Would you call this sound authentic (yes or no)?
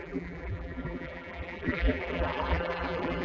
no